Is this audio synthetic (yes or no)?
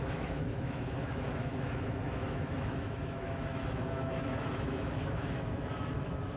yes